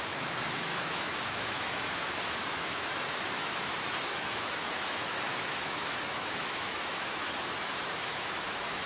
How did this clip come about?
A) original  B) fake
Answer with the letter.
B